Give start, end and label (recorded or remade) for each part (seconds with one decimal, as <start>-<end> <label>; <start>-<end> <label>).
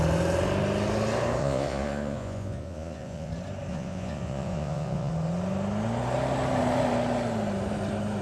0.0-1.4 recorded; 1.4-3.3 remade; 3.3-3.7 recorded; 3.7-5.1 remade; 5.1-8.2 recorded